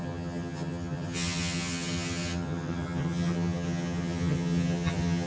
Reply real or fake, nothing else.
fake